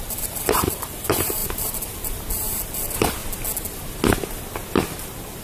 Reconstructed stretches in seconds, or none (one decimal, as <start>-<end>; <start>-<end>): 0.0-3.2